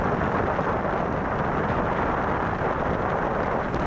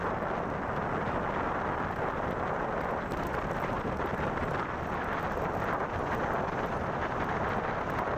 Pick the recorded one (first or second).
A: second